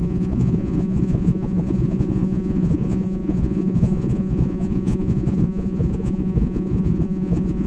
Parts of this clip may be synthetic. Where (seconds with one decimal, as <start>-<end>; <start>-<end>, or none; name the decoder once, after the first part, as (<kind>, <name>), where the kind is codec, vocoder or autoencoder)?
0.0-7.7 (vocoder, Vocos)